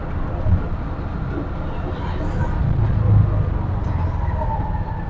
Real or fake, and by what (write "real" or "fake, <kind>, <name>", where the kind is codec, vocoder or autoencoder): real